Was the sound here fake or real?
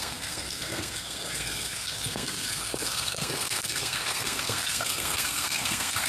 fake